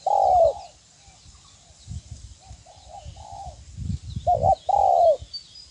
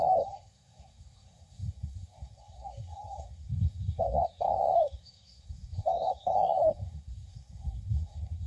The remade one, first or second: second